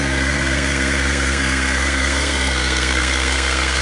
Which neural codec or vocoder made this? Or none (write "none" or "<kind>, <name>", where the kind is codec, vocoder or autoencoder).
codec, SNAC